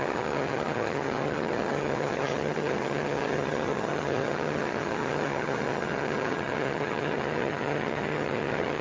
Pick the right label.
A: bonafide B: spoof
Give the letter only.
B